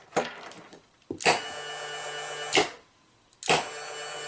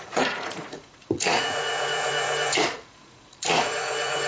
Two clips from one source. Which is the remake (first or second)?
second